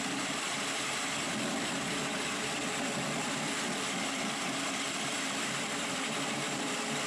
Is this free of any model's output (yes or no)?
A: no